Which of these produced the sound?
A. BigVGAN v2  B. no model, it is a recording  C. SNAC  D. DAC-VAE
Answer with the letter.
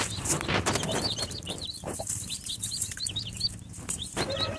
A